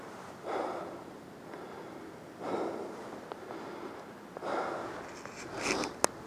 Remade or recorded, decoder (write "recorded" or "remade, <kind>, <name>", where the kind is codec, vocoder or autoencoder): recorded